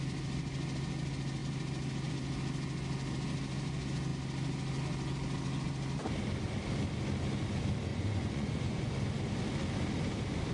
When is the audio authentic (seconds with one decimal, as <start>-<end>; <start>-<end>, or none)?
0.0-7.9; 8.9-10.5